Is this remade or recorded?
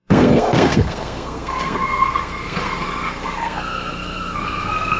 remade